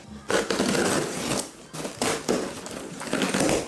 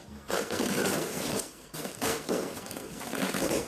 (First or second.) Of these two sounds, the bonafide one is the first